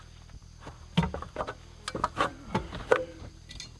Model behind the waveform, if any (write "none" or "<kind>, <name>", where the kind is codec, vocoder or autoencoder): none